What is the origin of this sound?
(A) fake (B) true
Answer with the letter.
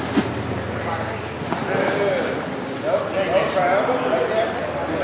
B